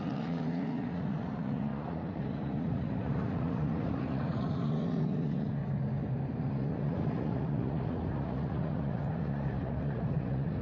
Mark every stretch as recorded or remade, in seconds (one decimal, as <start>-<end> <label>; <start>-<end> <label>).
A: 0.0-5.6 remade; 5.6-6.4 recorded; 6.4-10.6 remade

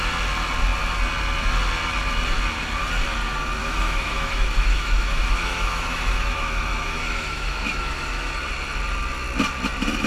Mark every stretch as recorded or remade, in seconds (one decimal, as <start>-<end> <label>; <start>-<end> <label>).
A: 0.0-3.6 recorded; 3.6-8.3 remade; 8.3-10.1 recorded

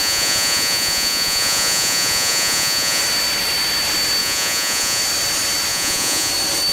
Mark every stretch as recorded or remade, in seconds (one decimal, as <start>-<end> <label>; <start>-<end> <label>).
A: 0.0-3.0 remade; 3.0-4.2 recorded; 4.2-5.0 remade; 5.0-5.7 recorded; 5.7-6.3 remade; 6.3-6.7 recorded

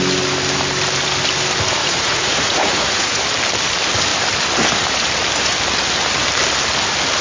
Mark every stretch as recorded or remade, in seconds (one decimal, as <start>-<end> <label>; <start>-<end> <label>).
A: 0.0-1.8 recorded; 1.8-3.2 remade; 3.2-7.2 recorded

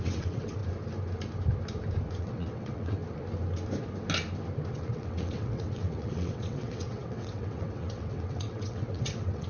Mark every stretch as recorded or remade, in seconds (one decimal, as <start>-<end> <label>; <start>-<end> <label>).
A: 0.0-0.6 remade; 0.6-2.2 recorded; 2.2-3.0 remade; 3.0-4.7 recorded; 4.7-9.5 remade

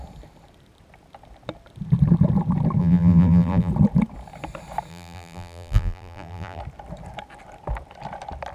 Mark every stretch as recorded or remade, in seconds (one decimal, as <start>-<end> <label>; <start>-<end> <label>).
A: 0.0-2.8 recorded; 2.8-3.7 remade; 3.7-4.9 recorded; 4.9-6.6 remade; 6.6-8.5 recorded

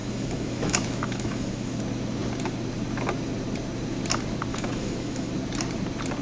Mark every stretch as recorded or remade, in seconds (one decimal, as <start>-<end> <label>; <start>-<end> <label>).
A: 0.0-1.8 remade; 1.8-4.5 recorded; 4.5-5.3 remade; 5.3-6.2 recorded